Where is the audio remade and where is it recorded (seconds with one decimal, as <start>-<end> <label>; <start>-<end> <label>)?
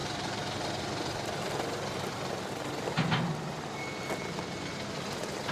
0.0-5.5 recorded